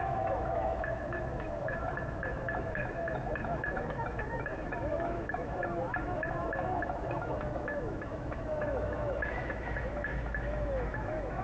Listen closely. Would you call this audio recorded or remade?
remade